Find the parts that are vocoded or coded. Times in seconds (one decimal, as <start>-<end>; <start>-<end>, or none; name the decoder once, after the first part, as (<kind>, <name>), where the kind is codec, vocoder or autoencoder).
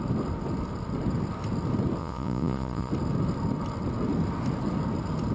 2.0-2.9 (vocoder, Vocos)